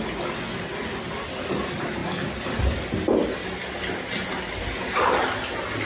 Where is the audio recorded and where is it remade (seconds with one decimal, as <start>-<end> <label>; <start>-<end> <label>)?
0.0-5.9 recorded